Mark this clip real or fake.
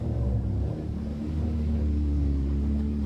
fake